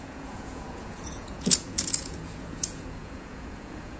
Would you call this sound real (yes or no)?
no